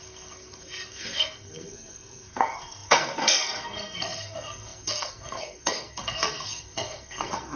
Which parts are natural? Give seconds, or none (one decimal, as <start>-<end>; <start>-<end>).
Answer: none